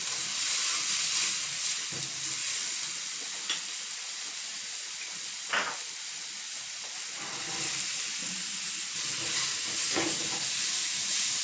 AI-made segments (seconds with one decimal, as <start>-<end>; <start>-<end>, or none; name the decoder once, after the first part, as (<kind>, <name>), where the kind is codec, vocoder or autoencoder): 9.5-10.2 (vocoder, Vocos); 10.8-11.4